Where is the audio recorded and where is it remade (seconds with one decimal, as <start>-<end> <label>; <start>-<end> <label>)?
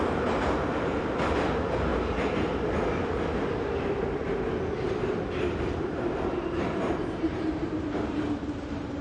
0.0-1.9 remade; 1.9-5.8 recorded; 5.8-9.0 remade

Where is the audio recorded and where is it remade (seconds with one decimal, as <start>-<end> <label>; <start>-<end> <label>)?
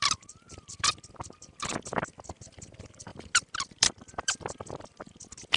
0.0-0.9 remade; 0.9-3.1 recorded; 3.1-5.1 remade; 5.1-5.6 recorded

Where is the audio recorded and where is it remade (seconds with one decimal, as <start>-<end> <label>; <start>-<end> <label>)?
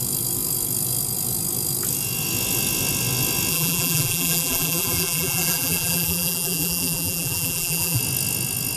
0.0-3.5 recorded; 3.5-8.0 remade; 8.0-8.8 recorded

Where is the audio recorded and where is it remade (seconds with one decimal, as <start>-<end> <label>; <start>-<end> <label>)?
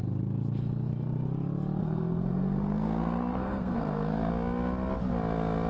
0.0-1.8 recorded; 1.8-4.3 remade; 4.3-5.7 recorded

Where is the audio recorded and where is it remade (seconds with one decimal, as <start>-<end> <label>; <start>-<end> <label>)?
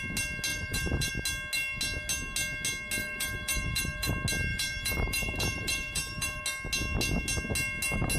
0.0-0.5 recorded; 0.5-1.1 remade; 1.1-3.0 recorded; 3.0-4.1 remade; 4.1-4.5 recorded; 4.5-6.4 remade; 6.4-8.2 recorded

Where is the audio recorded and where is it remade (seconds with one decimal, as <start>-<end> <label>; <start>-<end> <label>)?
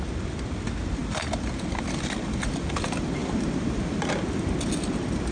0.0-5.3 recorded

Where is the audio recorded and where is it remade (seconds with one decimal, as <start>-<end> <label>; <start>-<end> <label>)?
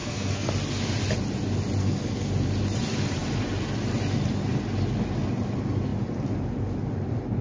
0.0-0.5 remade; 0.5-1.8 recorded; 1.8-2.3 remade; 2.3-7.4 recorded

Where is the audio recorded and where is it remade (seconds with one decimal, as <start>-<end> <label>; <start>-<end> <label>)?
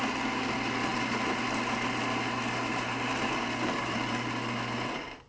0.0-5.3 recorded